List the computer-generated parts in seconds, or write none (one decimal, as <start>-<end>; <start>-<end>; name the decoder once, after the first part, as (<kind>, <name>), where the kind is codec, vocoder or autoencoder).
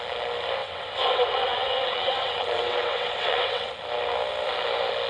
0.6-3.7 (vocoder, WaveNeXt)